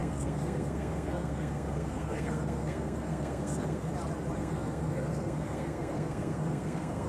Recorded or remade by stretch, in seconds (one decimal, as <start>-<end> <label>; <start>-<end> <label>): 0.0-3.9 remade; 3.9-4.4 recorded; 4.4-7.1 remade